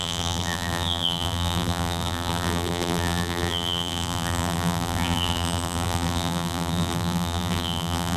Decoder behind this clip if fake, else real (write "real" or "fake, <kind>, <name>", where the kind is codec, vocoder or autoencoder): fake, vocoder, BigVGAN v2